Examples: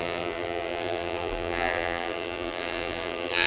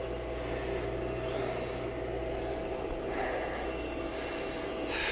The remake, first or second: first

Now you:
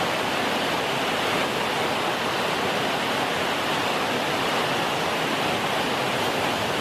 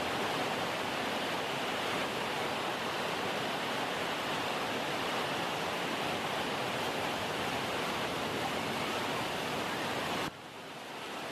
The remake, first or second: second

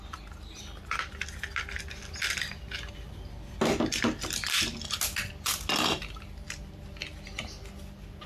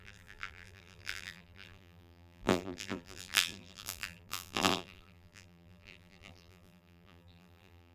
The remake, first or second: second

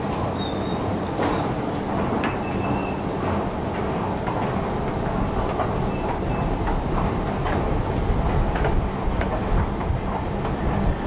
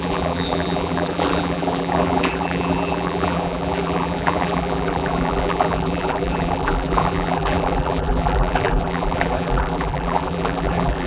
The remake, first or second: second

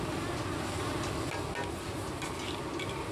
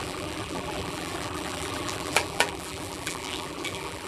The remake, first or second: second